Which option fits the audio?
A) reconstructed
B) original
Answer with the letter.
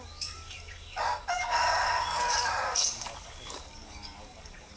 A